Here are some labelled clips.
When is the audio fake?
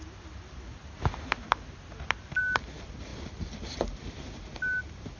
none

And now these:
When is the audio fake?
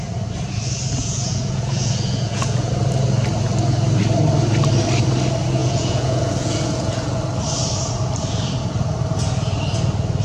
1.0-2.7 (vocoder, Vocos); 5.6-7.2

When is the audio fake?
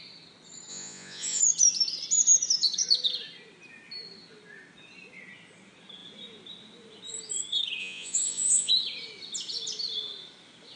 0.7-1.4 (vocoder, Vocos); 7.8-8.7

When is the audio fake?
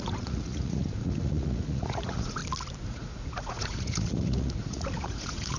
0.0-2.4 (vocoder, Vocos); 2.9-5.6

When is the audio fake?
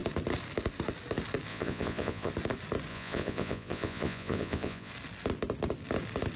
1.5-2.3 (vocoder, Vocos); 2.9-4.9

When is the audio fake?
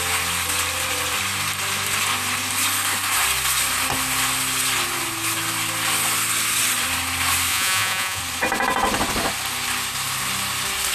7.5-8.2 (vocoder, Vocos)